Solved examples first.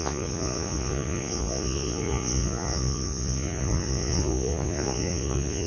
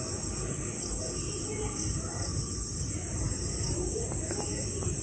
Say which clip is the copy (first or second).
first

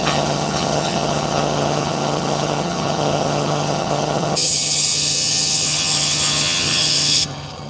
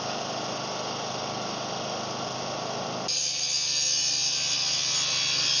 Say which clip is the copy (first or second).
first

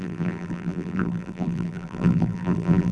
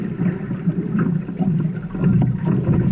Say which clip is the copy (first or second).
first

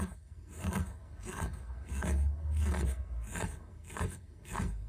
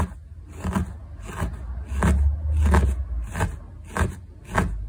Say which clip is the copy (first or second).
first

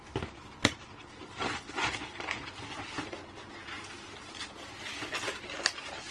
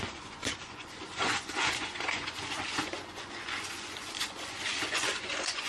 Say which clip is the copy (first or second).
second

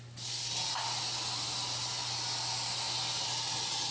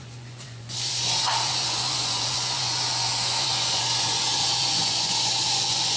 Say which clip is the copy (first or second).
second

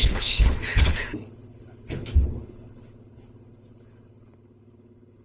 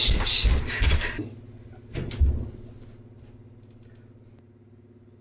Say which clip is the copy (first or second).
first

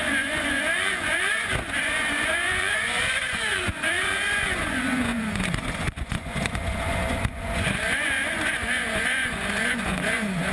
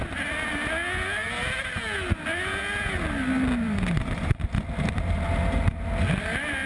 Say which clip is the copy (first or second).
first